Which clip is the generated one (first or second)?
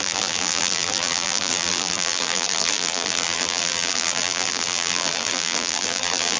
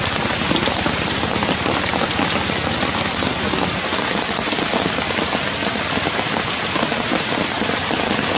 first